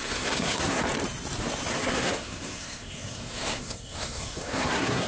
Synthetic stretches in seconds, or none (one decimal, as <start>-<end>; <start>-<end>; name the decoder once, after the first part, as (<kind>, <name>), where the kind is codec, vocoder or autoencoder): 0.0-0.8 (codec, SNAC); 1.8-5.1